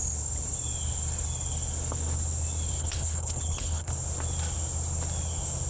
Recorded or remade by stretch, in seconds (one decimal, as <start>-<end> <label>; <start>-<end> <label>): 0.0-2.8 recorded; 2.8-3.9 remade; 3.9-5.7 recorded

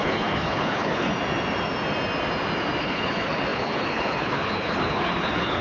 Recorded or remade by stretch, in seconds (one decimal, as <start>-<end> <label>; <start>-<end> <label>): 0.0-1.1 remade; 1.1-2.8 recorded; 2.8-5.6 remade

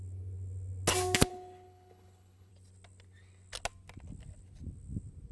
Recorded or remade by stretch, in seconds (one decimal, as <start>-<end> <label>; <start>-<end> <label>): 0.0-1.3 recorded; 1.3-2.5 remade; 2.5-5.3 recorded